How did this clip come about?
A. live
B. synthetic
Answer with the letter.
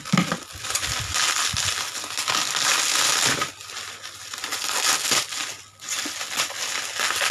A